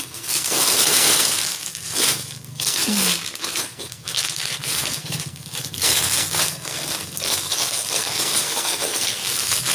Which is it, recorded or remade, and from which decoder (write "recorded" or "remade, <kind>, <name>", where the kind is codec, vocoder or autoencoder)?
remade, codec, SNAC